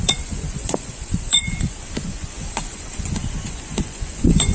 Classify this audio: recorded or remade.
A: remade